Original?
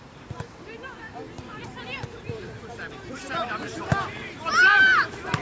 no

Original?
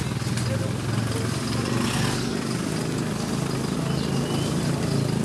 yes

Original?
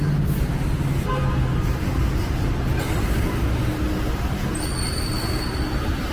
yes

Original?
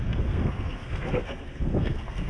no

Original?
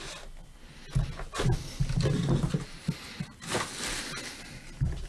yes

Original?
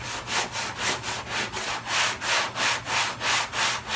yes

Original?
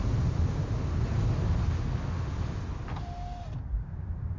yes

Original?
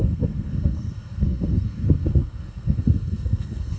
no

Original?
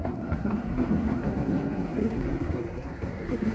no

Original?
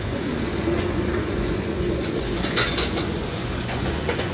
no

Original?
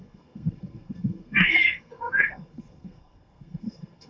no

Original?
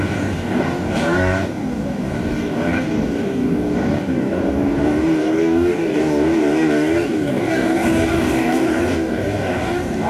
no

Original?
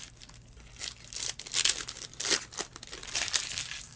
yes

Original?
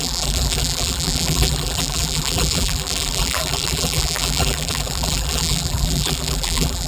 no